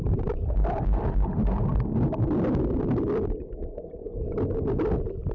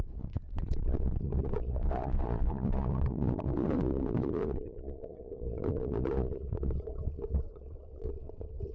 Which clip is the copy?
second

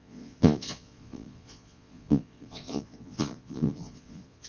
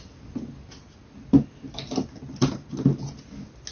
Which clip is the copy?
first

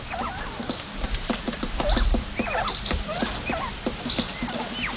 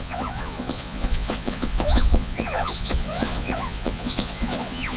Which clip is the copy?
second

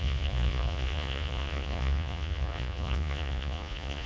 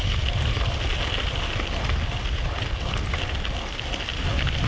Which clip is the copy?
first